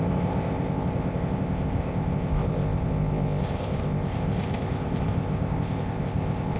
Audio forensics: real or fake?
fake